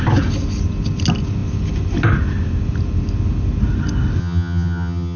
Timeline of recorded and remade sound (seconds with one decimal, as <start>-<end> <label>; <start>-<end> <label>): 0.0-4.2 recorded; 4.2-5.2 remade